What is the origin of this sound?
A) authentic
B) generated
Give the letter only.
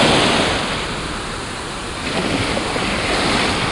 A